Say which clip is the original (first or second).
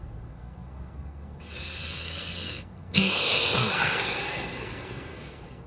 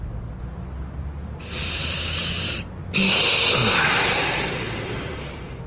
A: second